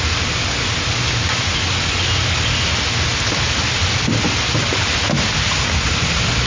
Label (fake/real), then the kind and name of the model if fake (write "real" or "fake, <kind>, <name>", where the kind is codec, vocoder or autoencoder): real